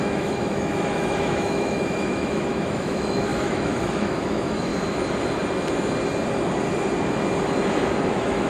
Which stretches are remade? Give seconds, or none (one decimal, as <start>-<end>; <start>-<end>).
0.0-4.7; 8.1-8.5